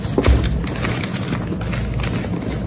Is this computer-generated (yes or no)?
no